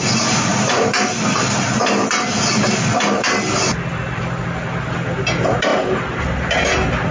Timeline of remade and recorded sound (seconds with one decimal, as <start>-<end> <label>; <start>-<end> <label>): 0.0-7.1 recorded